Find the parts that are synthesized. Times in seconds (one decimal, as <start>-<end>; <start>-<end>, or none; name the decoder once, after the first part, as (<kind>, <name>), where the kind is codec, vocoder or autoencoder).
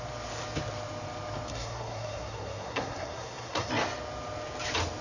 1.5-3.7 (codec, SNAC)